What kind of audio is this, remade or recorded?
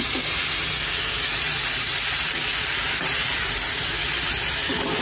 recorded